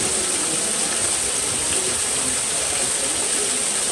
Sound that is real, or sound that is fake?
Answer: real